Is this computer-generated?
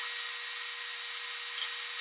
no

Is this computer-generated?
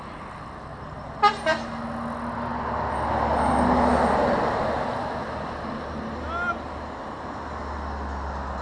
no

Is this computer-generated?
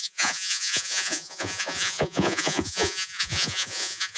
yes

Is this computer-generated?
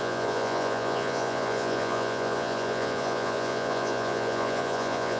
yes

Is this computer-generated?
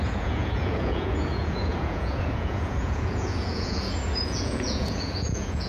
yes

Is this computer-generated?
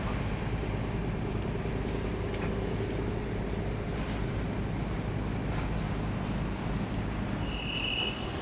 no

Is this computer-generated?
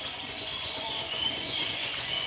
yes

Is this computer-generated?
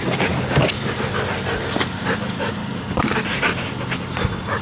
no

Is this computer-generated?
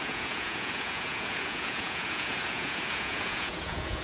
yes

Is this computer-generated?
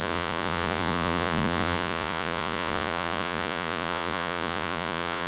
yes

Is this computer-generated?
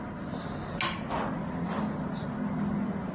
no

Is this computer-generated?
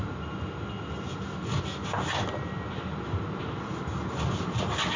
no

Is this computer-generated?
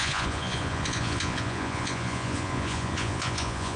yes